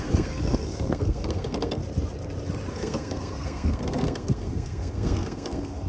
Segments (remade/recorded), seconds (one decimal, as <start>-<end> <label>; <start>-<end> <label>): 0.0-1.8 remade; 1.8-2.7 recorded; 2.7-5.9 remade